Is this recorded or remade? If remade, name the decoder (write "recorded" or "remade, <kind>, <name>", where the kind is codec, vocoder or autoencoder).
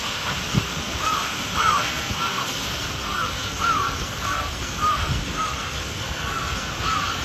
remade, codec, SNAC